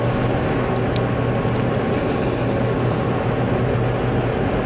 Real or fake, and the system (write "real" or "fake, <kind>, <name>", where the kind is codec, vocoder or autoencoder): real